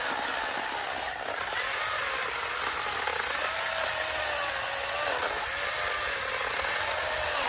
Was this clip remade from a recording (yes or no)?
no